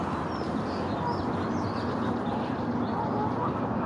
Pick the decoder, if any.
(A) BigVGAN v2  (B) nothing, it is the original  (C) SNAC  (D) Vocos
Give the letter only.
B